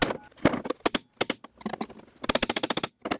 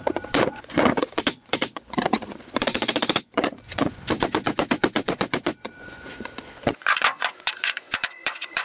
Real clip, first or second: first